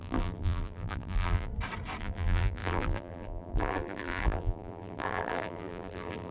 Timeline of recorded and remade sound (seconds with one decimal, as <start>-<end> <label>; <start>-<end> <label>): 0.0-1.5 remade; 1.5-2.0 recorded; 2.0-6.3 remade